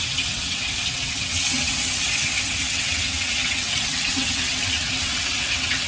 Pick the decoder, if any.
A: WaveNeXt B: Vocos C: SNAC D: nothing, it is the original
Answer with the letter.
A